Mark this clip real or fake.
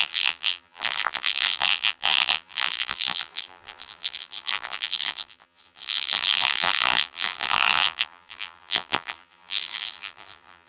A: fake